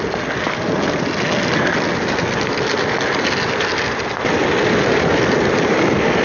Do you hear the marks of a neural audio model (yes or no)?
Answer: no